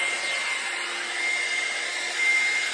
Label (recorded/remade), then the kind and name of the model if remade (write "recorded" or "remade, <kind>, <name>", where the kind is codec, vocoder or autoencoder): recorded